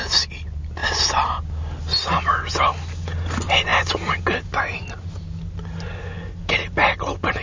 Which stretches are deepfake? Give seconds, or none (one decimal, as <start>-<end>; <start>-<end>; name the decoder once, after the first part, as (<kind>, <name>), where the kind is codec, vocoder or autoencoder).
none